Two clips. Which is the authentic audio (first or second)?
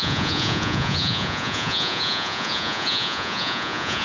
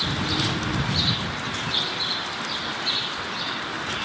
second